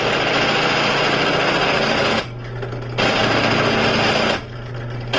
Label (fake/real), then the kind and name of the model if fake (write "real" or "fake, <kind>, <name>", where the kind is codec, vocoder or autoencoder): real